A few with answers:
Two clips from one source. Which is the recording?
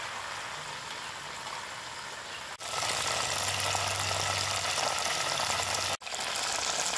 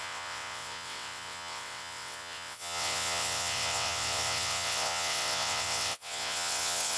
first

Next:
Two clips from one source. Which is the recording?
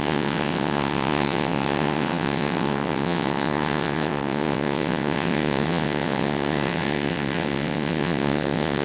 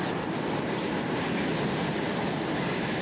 second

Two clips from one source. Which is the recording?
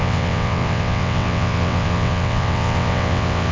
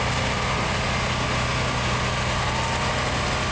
second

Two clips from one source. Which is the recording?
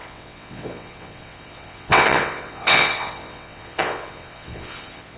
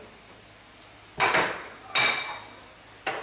second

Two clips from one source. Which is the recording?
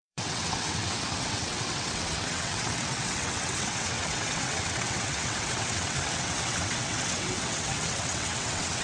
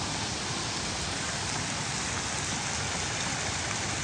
second